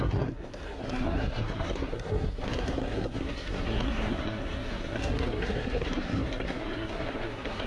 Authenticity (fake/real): fake